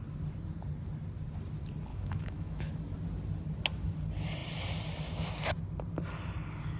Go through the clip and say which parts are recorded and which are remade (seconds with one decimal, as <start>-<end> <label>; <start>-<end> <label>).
0.0-1.9 recorded; 1.9-2.7 remade; 2.7-6.8 recorded